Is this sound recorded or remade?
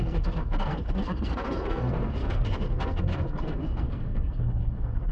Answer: remade